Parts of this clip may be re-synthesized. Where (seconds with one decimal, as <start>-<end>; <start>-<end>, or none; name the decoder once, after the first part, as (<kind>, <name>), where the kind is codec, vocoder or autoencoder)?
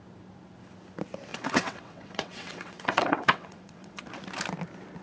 1.3-4.0 (vocoder, WaveNeXt)